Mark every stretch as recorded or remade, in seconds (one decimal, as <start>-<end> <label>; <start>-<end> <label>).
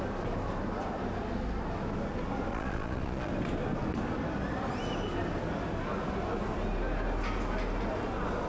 0.0-2.5 recorded; 2.5-3.3 remade; 3.3-8.5 recorded